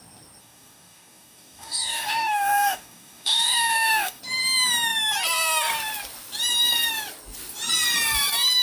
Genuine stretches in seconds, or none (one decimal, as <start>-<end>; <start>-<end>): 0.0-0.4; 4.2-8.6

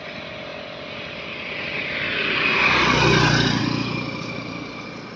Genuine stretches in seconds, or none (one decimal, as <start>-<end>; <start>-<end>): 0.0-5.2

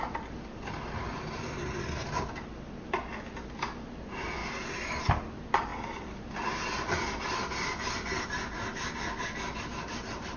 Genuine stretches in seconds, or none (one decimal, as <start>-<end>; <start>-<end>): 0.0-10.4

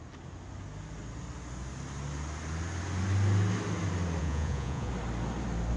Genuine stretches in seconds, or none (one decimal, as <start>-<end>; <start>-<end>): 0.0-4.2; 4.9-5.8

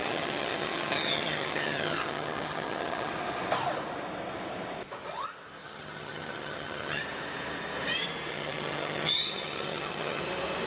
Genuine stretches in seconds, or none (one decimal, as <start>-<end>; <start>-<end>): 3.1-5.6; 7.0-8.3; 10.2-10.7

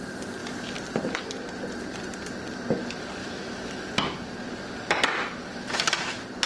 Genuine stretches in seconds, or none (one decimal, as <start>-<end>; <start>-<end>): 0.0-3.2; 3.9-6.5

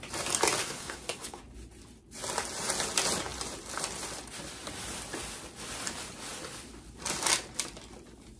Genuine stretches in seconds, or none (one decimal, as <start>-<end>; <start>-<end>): 0.0-0.6; 1.4-8.4

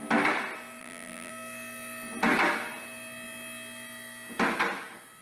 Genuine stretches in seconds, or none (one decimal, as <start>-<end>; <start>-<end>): 0.0-0.8; 1.3-5.2